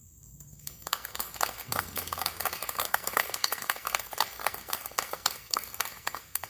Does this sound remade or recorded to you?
remade